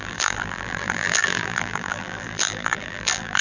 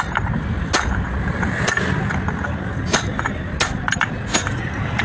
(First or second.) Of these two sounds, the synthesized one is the first